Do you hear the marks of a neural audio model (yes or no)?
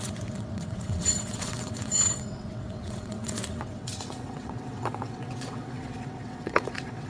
yes